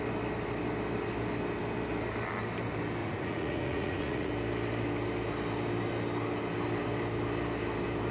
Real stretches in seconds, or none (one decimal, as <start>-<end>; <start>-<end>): 0.0-3.0; 4.3-8.1